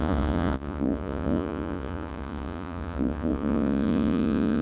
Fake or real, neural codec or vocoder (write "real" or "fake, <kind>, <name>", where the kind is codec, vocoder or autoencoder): fake, vocoder, Vocos